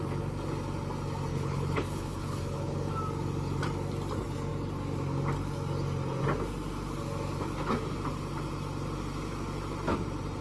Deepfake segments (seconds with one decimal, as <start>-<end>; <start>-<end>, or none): 1.3-2.9